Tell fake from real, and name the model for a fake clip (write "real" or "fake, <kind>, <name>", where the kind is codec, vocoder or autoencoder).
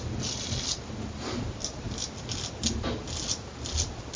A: real